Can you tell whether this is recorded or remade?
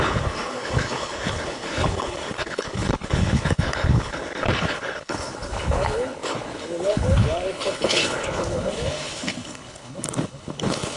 remade